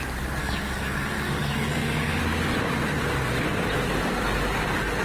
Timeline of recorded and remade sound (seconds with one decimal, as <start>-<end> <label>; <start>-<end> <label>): 0.0-0.4 recorded; 0.4-2.2 remade; 2.2-5.0 recorded